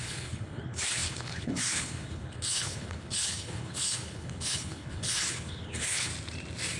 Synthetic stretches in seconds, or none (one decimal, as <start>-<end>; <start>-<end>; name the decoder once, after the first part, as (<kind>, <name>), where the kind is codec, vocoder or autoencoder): 0.0-6.1 (codec, HILCodec)